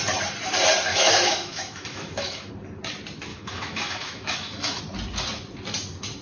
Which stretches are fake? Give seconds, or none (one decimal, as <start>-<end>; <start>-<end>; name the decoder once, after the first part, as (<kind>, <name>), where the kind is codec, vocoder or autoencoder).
0.9-2.5 (autoencoder, DAC-VAE); 3.3-4.8